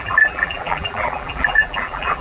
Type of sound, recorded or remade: remade